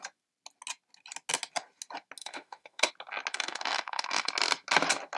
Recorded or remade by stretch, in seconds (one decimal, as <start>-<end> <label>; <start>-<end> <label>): 0.0-2.2 recorded; 2.2-2.9 remade; 2.9-3.3 recorded; 3.3-4.3 remade; 4.3-5.2 recorded